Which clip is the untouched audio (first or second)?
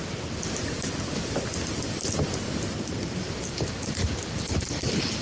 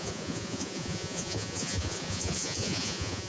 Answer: first